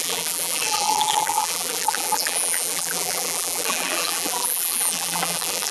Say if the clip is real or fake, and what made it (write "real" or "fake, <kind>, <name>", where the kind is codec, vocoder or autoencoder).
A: fake, vocoder, BigVGAN v2